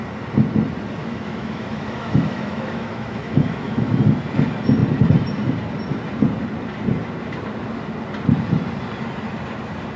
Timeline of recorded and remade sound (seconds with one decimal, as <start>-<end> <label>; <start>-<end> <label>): 0.0-1.0 recorded; 1.0-4.0 remade; 4.0-10.0 recorded